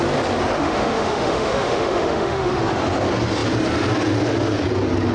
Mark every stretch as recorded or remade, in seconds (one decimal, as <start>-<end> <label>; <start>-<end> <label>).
0.0-0.6 recorded; 0.6-2.6 remade; 2.6-5.1 recorded